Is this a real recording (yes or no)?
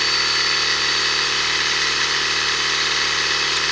yes